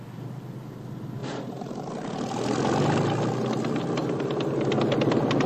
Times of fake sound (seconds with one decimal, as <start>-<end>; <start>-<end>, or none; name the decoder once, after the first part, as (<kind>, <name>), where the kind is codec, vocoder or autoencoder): 1.2-1.9 (vocoder, BigVGAN v2); 4.0-4.8